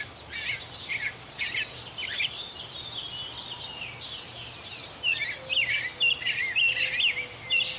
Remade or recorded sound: recorded